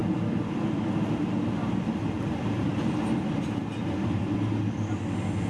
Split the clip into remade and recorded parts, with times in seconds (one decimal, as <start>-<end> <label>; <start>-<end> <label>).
0.0-1.2 remade; 1.2-1.6 recorded; 1.6-4.9 remade; 4.9-5.5 recorded